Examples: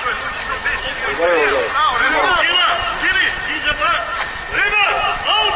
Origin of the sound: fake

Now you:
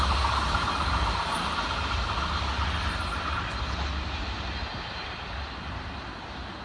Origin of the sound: real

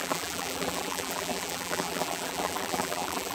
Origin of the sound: fake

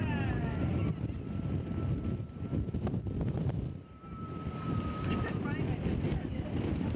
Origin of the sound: real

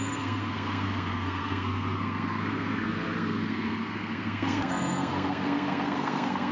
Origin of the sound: fake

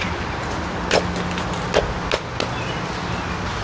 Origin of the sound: real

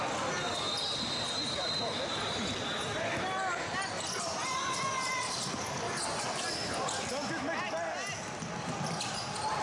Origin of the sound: real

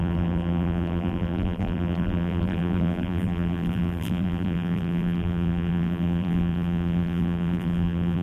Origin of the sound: fake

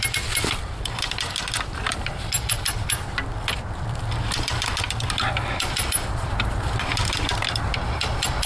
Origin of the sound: fake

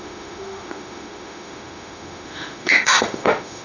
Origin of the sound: fake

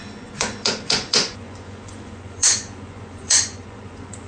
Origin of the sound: fake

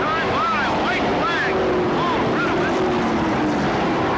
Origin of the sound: real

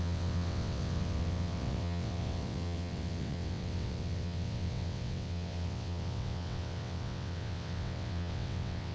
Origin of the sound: fake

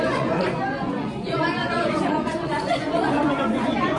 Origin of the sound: fake